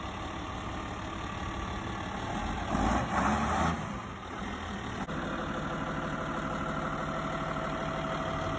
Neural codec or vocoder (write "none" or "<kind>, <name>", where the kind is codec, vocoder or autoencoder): none